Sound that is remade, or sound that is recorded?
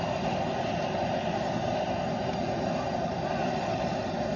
recorded